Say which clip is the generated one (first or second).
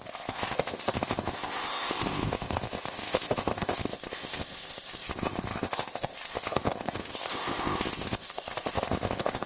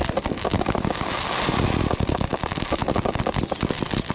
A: first